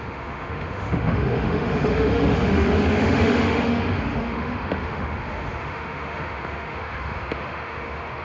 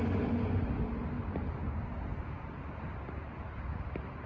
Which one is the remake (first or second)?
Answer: first